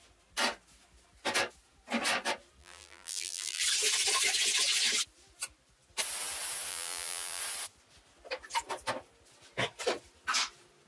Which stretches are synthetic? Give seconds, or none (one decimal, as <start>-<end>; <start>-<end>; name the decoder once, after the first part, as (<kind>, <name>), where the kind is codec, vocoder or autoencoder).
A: 2.6-3.6 (vocoder, BigVGAN v2); 6.7-7.4